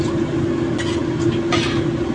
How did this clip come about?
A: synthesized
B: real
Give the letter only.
B